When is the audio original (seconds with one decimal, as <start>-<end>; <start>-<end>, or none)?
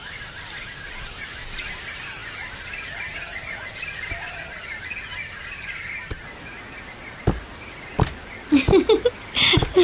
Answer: 0.9-9.8